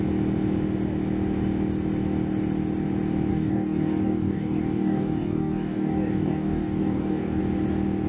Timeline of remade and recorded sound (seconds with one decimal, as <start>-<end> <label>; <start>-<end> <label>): 0.0-3.3 recorded; 3.3-7.4 remade; 7.4-8.1 recorded